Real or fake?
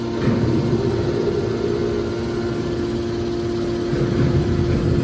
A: real